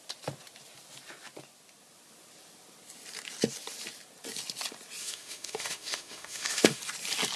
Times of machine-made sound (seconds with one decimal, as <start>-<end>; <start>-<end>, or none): 5.0-6.8